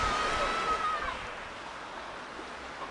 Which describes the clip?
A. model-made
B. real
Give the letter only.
B